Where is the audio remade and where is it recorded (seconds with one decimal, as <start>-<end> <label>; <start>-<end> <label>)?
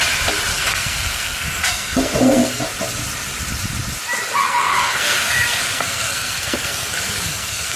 0.0-0.5 recorded; 0.5-2.6 remade; 2.6-4.4 recorded; 4.4-7.8 remade